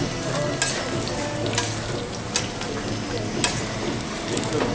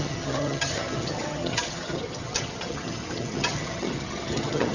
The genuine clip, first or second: first